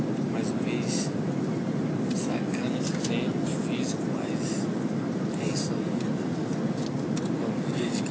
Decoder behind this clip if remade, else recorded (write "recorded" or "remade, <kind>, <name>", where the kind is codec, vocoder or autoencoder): recorded